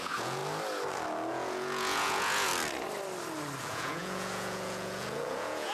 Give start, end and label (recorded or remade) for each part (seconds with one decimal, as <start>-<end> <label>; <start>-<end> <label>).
0.0-0.4 remade; 0.4-1.3 recorded; 1.3-2.5 remade; 2.5-3.6 recorded; 3.6-5.7 remade